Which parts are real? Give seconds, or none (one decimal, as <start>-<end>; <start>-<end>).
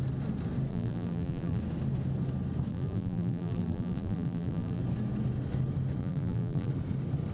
0.0-0.7; 1.6-2.7; 4.8-6.0; 6.7-7.3